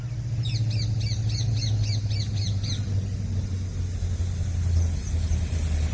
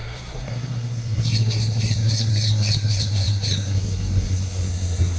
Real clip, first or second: first